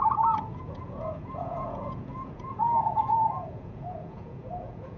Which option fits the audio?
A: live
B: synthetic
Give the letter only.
B